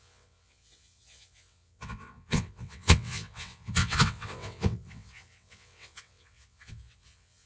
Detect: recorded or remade remade